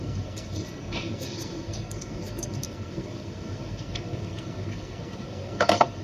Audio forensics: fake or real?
fake